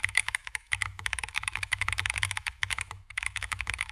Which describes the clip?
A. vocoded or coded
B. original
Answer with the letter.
A